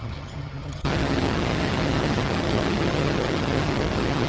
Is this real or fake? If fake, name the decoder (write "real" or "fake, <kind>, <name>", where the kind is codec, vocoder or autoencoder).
fake, vocoder, HiFi-GAN